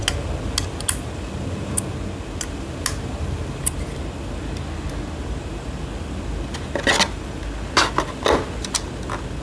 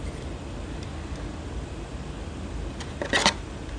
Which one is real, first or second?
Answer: first